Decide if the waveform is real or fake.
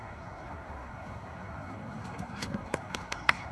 fake